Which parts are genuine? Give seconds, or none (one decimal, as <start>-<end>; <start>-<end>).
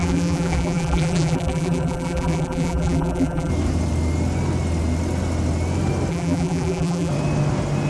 3.5-6.1; 7.1-7.9